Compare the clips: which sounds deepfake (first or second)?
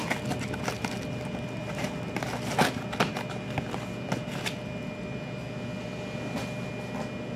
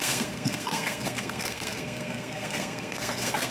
second